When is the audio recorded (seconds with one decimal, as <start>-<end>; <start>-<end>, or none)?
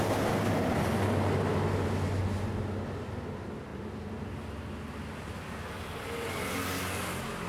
0.0-7.5